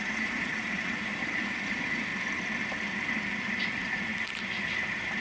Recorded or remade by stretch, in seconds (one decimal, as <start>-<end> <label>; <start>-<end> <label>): 0.0-2.1 remade; 2.1-3.6 recorded; 3.6-4.1 remade; 4.1-5.2 recorded